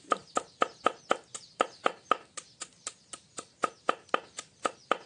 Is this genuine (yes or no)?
yes